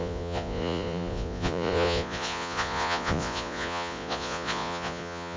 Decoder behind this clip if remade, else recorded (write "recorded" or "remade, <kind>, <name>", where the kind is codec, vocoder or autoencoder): remade, vocoder, Vocos